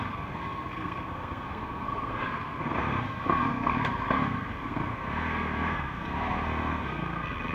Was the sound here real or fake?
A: fake